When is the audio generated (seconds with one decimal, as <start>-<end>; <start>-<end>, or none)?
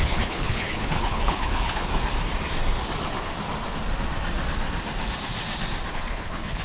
0.0-1.9; 5.9-6.6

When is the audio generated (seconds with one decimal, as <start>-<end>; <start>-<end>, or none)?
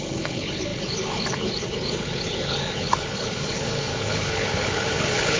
0.0-5.4